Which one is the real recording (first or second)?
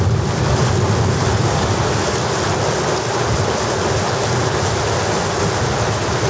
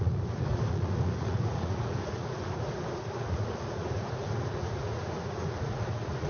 first